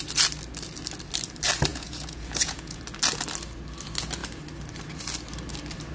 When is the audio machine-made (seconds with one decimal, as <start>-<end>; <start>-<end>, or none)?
1.7-2.8